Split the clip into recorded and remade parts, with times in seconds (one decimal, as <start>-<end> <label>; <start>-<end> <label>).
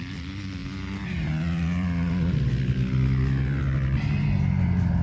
0.0-5.0 recorded